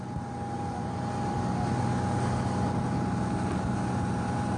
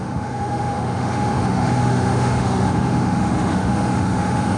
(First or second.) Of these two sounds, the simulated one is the second